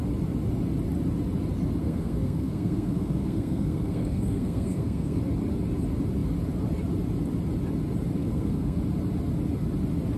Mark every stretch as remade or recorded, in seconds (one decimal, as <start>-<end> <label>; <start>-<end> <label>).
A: 0.0-1.8 recorded; 1.8-5.2 remade; 5.2-8.2 recorded; 8.2-8.8 remade; 8.8-10.2 recorded